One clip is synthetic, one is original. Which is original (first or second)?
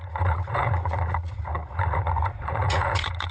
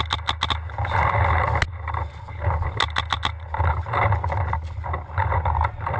second